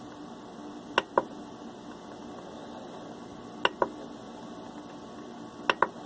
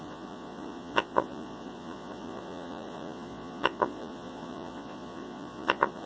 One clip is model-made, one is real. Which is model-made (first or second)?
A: second